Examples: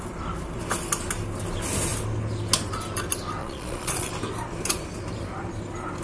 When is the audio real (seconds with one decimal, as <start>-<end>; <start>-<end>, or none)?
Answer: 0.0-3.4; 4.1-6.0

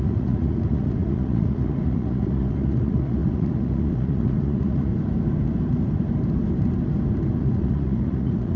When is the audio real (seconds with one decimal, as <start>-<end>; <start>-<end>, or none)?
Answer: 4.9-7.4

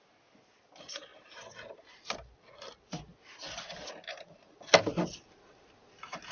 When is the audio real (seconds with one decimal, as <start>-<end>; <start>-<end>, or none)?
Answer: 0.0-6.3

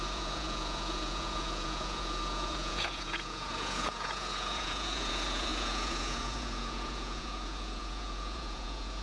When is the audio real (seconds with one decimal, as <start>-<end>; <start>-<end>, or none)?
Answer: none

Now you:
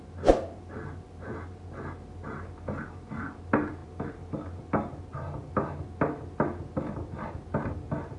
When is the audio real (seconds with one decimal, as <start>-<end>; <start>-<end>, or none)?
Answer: 0.0-8.2